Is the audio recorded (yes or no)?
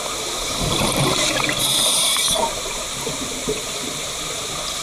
no